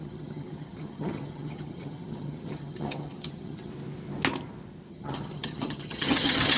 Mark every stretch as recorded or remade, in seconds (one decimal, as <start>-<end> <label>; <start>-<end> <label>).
0.0-3.7 remade; 3.7-4.9 recorded; 4.9-6.6 remade